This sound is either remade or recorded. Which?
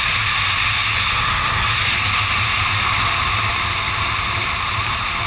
recorded